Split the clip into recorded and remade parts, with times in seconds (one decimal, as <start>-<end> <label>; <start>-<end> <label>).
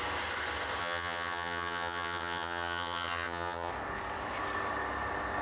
0.0-0.8 recorded; 0.8-3.7 remade; 3.7-5.4 recorded